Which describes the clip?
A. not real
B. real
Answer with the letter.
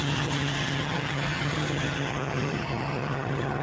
A